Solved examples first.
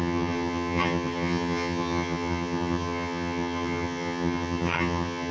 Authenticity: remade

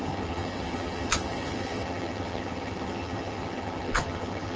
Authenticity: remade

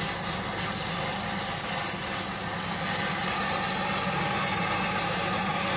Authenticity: recorded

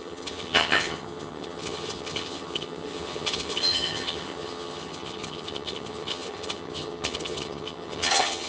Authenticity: remade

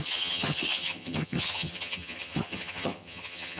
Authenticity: remade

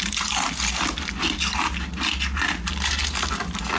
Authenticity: recorded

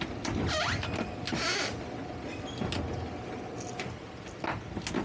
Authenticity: recorded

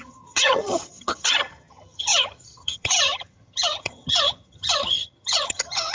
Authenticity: remade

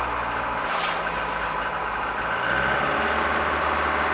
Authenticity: recorded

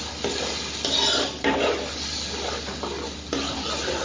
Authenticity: recorded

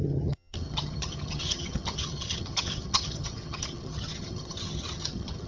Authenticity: remade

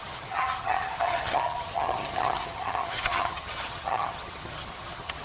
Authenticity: remade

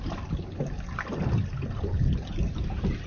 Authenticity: recorded